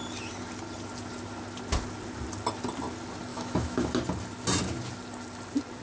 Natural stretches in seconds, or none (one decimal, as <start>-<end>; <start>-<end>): 0.0-3.3; 3.9-5.8